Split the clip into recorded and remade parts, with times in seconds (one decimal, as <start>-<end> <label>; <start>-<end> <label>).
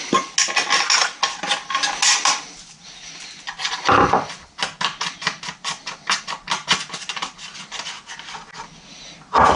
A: 0.0-9.6 recorded